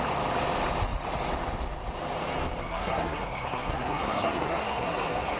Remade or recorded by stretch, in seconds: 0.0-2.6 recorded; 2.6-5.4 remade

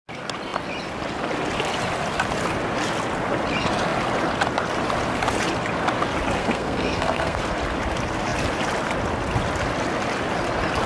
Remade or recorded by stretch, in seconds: 0.0-6.4 recorded; 6.4-7.4 remade; 7.4-10.9 recorded

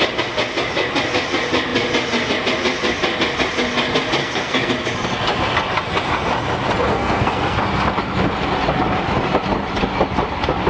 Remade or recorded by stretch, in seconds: 0.0-4.2 recorded; 4.2-4.7 remade; 4.7-6.9 recorded; 6.9-7.6 remade; 7.6-10.7 recorded